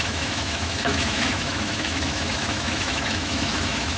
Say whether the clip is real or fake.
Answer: fake